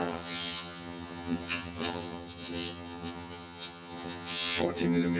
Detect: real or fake fake